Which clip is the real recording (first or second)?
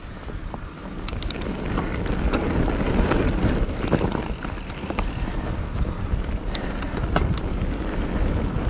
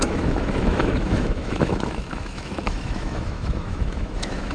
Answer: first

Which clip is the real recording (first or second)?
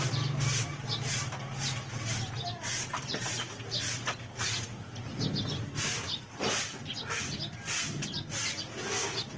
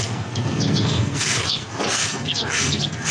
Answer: first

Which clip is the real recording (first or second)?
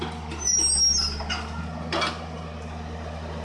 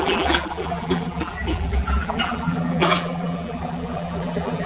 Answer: first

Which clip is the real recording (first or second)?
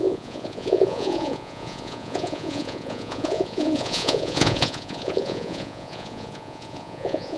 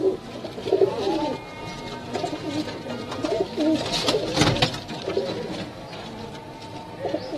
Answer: second